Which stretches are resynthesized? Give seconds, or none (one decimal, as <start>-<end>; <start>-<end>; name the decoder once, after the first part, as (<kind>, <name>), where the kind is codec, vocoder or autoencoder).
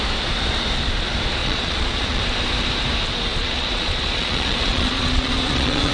1.4-2.2 (vocoder, Vocos); 3.3-5.9